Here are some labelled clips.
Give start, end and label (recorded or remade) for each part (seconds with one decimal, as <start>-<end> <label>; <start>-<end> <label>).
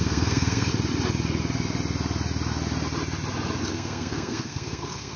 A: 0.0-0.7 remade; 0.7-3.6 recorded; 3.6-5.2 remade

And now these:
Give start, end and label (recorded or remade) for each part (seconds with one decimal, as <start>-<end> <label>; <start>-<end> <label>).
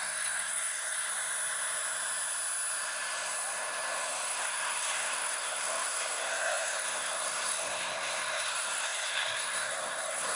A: 0.0-1.1 remade; 1.1-4.3 recorded; 4.3-10.4 remade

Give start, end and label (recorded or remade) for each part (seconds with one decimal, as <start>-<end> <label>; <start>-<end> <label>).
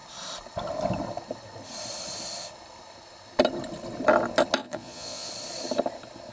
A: 0.0-4.6 recorded; 4.6-5.3 remade; 5.3-6.3 recorded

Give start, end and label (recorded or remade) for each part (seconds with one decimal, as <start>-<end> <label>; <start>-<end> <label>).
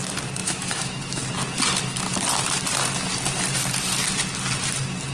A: 0.0-0.4 recorded; 0.4-1.2 remade; 1.2-5.1 recorded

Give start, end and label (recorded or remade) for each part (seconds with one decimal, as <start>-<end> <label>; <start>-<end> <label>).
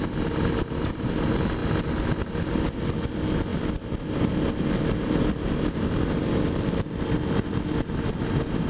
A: 0.0-8.7 recorded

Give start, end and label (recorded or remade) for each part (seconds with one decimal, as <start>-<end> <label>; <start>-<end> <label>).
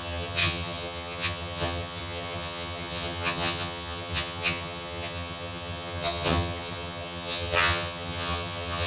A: 0.0-8.9 remade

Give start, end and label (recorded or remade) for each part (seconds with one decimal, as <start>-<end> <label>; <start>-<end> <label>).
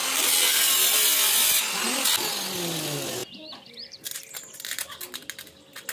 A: 0.0-3.2 recorded; 3.2-5.0 remade; 5.0-5.9 recorded